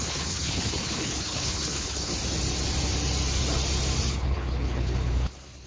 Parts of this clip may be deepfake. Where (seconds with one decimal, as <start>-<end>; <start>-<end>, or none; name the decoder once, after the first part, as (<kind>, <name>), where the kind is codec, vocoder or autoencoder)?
0.0-2.1 (codec, HILCodec); 4.1-5.7